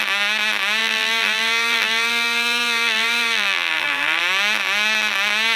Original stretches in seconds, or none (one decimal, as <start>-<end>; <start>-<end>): 0.0-0.8; 4.2-5.6